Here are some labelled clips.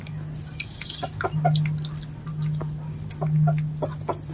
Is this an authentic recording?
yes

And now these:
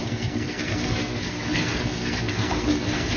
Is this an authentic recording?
no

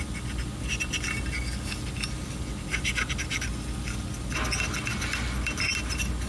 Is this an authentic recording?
yes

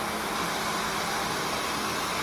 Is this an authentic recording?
yes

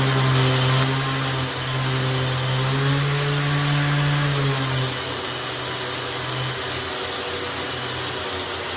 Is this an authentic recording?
yes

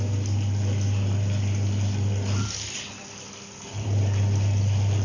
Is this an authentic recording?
yes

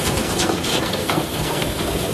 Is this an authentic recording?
no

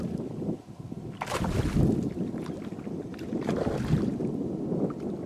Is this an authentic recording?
yes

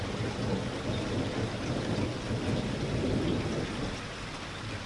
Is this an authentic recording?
yes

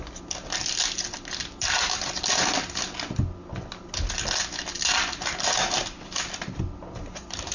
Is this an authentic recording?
yes